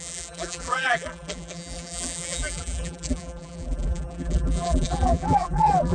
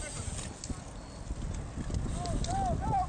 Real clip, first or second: second